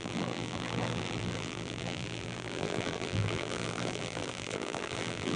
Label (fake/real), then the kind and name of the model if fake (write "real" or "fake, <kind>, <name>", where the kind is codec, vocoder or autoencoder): fake, vocoder, BigVGAN v2